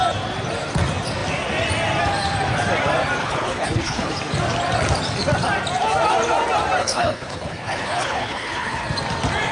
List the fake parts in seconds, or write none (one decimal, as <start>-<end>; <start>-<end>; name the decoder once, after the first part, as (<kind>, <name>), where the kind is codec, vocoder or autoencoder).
3.2-4.1 (codec, HILCodec); 6.8-8.8